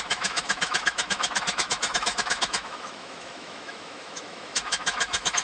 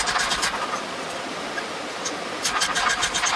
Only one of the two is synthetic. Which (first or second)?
first